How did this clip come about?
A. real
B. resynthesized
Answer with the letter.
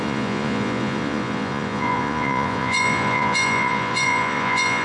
B